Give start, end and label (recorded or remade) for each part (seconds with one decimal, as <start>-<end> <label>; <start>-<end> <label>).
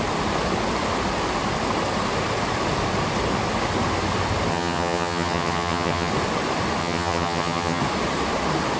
0.0-4.5 recorded; 4.5-6.1 remade; 6.1-6.8 recorded; 6.8-7.8 remade; 7.8-8.8 recorded